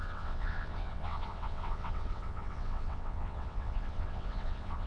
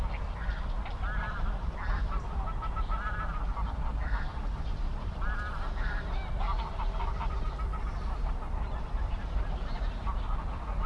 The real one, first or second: second